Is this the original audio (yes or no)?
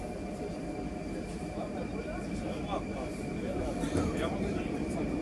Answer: no